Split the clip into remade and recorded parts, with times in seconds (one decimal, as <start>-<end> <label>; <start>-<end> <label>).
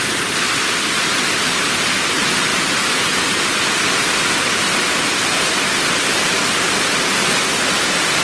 0.0-8.2 recorded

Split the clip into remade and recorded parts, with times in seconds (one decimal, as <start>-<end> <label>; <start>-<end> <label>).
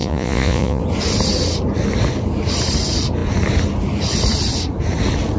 0.0-0.8 remade; 0.8-5.4 recorded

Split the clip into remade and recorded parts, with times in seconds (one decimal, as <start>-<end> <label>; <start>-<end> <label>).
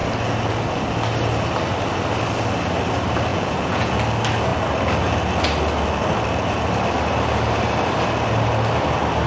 0.0-3.3 recorded; 3.3-3.9 remade; 3.9-9.3 recorded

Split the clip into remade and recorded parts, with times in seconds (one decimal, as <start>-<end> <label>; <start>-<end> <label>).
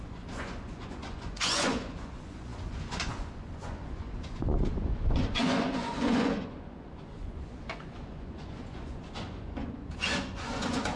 0.0-11.0 remade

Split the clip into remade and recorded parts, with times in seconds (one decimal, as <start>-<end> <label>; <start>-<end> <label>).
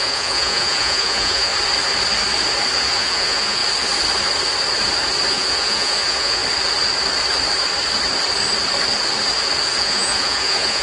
0.0-1.5 remade; 1.5-2.8 recorded; 2.8-3.6 remade; 3.6-5.3 recorded; 5.3-6.4 remade; 6.4-9.8 recorded; 9.8-10.8 remade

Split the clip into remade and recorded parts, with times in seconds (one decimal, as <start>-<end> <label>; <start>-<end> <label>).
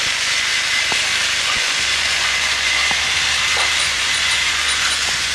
0.0-0.5 remade; 0.5-1.4 recorded; 1.4-2.8 remade; 2.8-3.8 recorded; 3.8-5.3 remade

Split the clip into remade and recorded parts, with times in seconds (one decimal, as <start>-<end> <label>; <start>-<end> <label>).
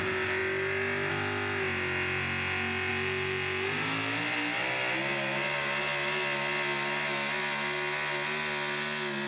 0.0-9.3 recorded